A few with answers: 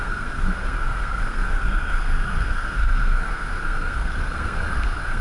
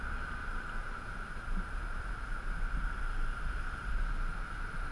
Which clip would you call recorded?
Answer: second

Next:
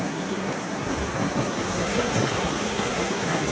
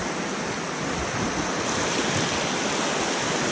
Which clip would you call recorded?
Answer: second